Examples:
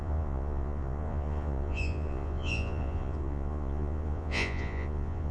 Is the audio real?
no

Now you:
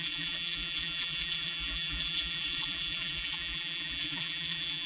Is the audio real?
no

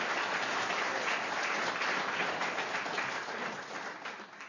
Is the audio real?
yes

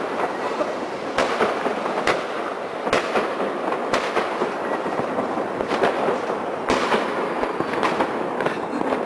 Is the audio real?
yes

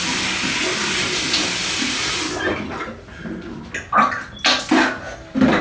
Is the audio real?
yes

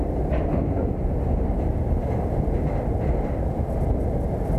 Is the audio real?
yes